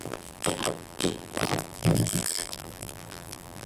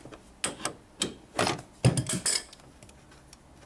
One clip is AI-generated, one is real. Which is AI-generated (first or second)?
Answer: first